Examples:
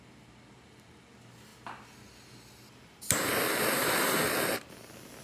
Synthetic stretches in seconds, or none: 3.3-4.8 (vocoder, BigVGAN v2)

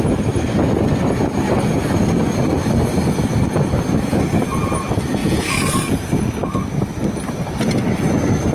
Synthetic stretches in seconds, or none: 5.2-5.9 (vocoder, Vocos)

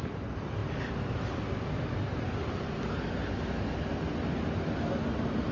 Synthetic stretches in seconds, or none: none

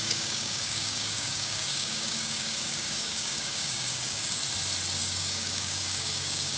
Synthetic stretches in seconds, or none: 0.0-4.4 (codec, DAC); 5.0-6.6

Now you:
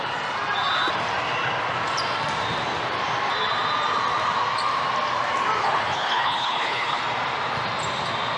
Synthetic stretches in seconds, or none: 5.6-7.0 (codec, HILCodec)